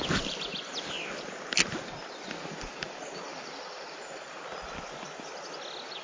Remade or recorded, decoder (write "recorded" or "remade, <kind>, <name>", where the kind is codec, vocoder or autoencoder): recorded